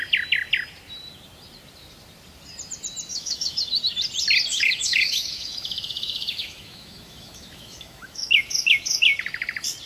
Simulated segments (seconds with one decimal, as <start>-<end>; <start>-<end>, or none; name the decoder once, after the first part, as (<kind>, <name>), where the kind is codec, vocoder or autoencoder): 3.1-3.6 (autoencoder, DAC-VAE); 4.5-9.0